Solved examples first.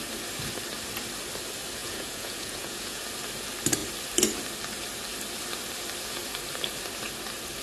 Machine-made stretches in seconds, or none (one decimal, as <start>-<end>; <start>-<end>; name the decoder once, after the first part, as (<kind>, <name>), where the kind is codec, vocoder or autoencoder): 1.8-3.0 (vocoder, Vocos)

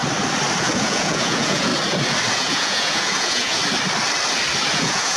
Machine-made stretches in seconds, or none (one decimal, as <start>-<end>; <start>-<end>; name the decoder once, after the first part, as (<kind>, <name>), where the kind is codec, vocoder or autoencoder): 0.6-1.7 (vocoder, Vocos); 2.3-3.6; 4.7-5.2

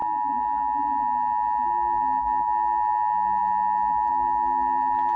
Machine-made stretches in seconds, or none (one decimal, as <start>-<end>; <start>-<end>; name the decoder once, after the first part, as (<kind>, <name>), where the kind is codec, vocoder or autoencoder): none